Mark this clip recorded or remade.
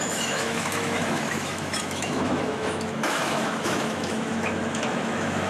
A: remade